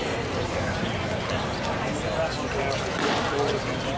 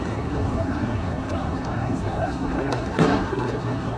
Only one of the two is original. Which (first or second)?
first